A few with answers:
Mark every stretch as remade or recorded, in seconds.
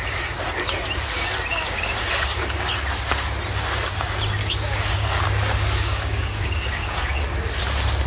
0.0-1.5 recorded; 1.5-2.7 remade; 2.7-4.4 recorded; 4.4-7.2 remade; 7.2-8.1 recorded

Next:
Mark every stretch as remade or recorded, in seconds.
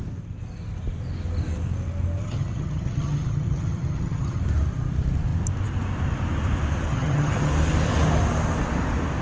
0.0-2.2 recorded; 2.2-4.4 remade; 4.4-6.9 recorded; 6.9-7.5 remade; 7.5-9.2 recorded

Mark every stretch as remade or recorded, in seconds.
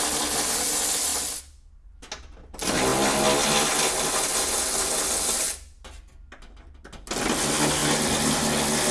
0.0-8.9 recorded